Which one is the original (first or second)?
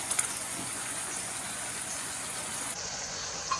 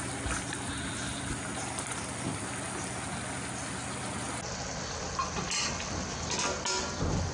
second